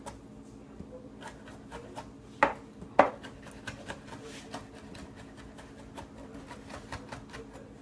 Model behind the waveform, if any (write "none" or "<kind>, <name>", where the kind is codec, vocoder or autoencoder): none